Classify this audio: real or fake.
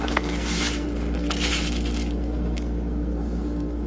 fake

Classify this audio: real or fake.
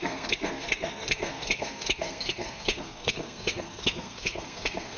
fake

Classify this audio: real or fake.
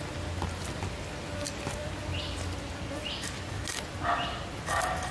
real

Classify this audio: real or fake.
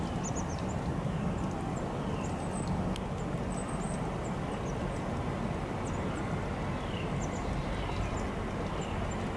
real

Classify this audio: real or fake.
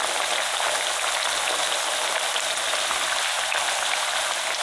real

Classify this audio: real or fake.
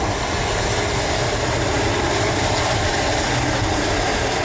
real